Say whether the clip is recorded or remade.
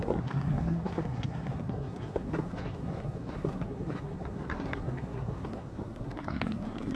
remade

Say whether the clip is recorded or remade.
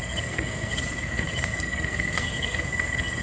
remade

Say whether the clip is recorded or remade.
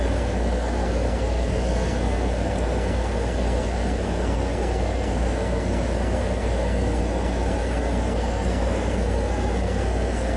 remade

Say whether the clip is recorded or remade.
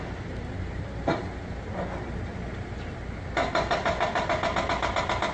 recorded